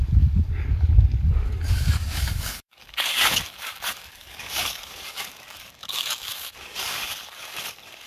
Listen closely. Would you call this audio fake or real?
fake